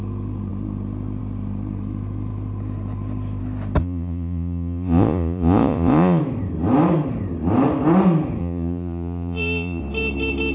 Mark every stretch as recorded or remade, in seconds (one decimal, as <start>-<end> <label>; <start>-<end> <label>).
0.0-3.8 recorded; 3.8-6.2 remade; 6.2-8.4 recorded; 8.4-9.8 remade; 9.8-10.5 recorded